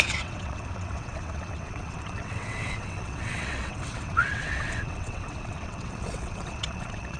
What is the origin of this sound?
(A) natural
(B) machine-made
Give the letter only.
B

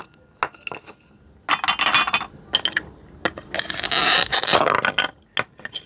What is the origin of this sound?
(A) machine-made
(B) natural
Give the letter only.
B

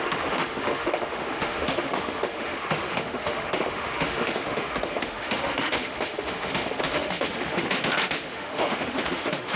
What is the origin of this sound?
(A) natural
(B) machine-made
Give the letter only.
B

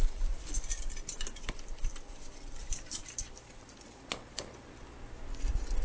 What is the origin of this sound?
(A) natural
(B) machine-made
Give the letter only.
B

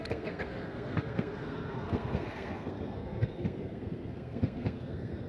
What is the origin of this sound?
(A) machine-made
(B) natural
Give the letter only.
A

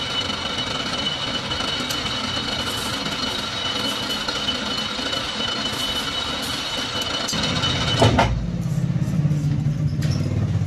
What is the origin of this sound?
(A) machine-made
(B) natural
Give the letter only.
B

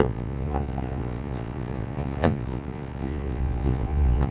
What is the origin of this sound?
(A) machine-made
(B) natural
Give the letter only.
A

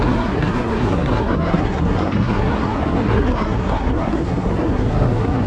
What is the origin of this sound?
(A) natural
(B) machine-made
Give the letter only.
B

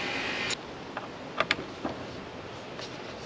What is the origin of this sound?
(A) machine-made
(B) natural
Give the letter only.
B